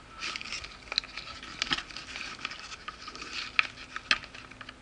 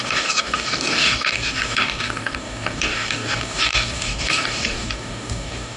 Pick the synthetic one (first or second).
second